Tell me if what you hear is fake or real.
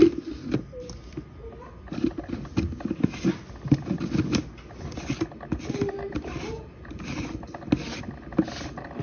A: real